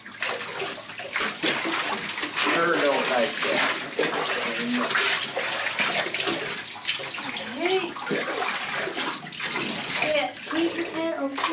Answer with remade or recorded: recorded